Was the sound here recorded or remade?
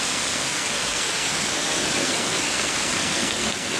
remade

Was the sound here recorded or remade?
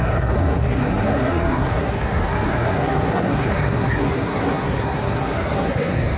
remade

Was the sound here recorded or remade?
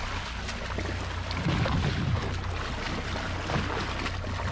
recorded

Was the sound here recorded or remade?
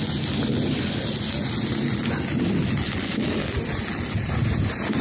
recorded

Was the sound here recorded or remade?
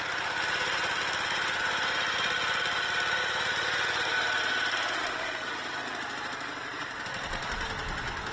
recorded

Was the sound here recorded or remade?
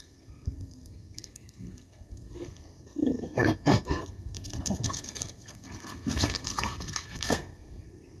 remade